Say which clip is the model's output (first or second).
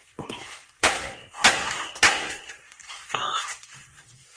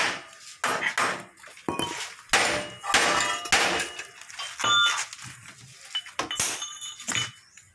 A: first